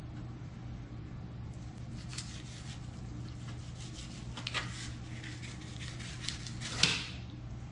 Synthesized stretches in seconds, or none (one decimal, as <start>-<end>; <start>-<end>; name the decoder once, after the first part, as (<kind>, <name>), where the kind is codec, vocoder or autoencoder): 0.0-2.1 (vocoder, BigVGAN v2); 6.7-7.7